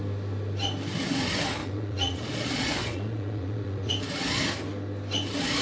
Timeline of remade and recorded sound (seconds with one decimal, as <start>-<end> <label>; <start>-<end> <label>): 0.0-1.6 recorded; 1.6-3.9 remade; 3.9-5.6 recorded